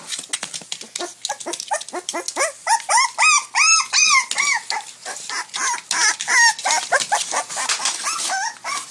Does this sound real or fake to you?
real